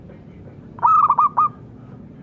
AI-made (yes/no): no